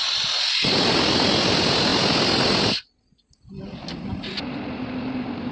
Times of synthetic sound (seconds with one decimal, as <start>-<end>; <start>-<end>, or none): none